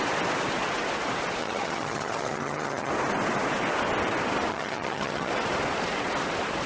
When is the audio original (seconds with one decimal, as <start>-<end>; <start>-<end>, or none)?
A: 0.0-1.4; 2.9-4.5; 5.3-6.7